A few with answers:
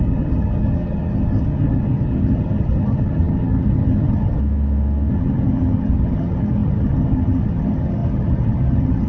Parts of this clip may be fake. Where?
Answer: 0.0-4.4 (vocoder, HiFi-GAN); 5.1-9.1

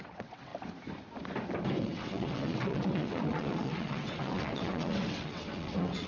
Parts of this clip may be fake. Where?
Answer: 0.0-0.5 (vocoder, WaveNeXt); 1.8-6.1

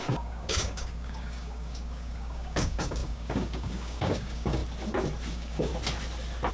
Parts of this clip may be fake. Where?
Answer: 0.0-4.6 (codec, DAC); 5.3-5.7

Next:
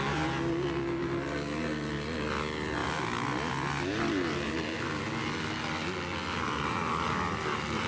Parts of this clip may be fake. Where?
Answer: none

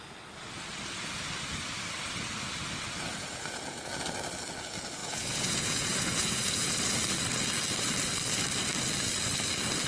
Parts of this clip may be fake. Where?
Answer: 3.1-3.9 (vocoder, Vocos); 5.0-6.7